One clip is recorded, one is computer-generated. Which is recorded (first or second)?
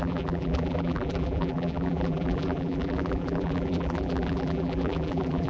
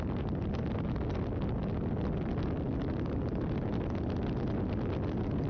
second